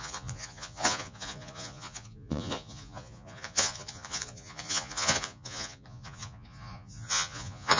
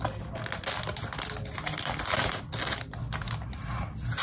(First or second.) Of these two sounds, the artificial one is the first